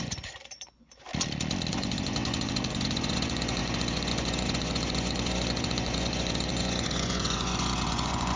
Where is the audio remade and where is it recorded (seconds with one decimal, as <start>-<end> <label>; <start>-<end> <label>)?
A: 0.0-1.1 remade; 1.1-1.7 recorded; 1.7-8.4 remade